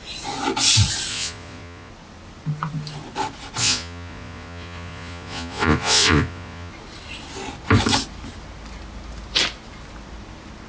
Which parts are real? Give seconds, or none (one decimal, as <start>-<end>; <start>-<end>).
0.0-1.1; 1.9-3.6; 6.7-10.7